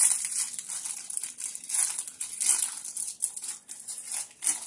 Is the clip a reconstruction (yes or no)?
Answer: no